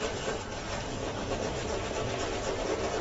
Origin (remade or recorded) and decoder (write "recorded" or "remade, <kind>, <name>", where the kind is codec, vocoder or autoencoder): recorded